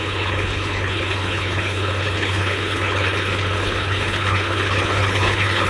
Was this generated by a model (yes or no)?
yes